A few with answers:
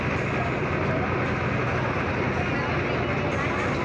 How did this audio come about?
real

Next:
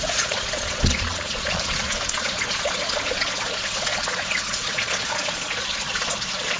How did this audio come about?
fake